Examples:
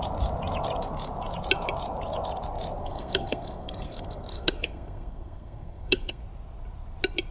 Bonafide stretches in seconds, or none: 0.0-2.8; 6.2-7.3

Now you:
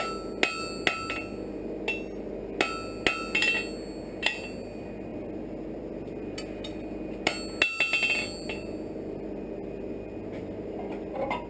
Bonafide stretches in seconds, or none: 0.0-11.5

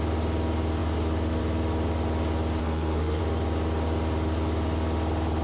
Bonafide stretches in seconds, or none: 0.0-2.6; 3.2-5.4

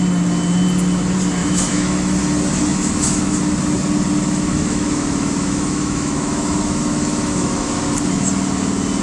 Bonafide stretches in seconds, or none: 0.0-1.4; 2.2-2.7; 3.4-4.5; 7.8-9.0

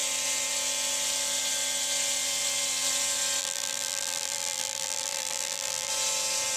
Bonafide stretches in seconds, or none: 0.0-3.4; 5.9-6.6

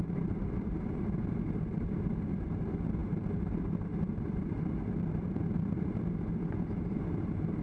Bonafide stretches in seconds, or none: none